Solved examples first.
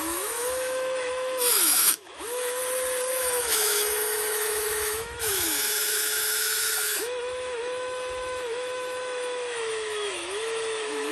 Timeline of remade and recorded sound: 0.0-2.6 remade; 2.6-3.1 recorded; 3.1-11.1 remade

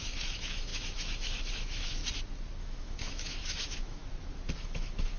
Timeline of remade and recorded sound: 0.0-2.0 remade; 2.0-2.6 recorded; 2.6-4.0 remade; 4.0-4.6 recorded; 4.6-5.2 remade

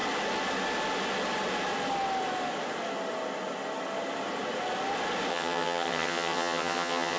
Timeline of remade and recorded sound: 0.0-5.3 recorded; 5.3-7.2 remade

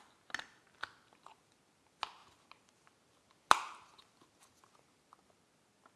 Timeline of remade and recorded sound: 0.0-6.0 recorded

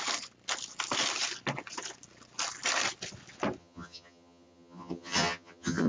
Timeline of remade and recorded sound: 0.0-3.6 recorded; 3.6-5.9 remade